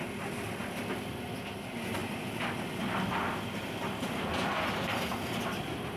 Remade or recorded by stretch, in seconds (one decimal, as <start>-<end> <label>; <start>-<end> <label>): 0.0-6.0 recorded